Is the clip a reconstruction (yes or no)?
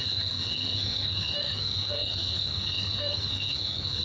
yes